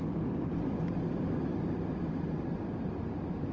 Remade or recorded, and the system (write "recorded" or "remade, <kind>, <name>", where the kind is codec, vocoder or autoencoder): recorded